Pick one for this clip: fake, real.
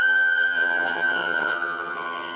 fake